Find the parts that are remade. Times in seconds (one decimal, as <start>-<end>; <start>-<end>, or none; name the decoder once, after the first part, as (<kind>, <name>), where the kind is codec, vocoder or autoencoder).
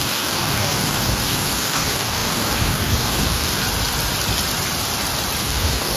0.0-3.6 (codec, DAC); 5.4-6.0